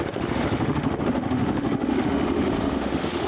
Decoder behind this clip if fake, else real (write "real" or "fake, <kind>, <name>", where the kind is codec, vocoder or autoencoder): fake, autoencoder, DAC-VAE